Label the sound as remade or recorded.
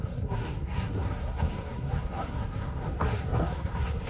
remade